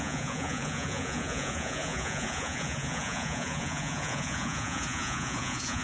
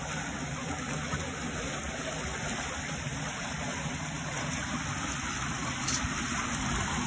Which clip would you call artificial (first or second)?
first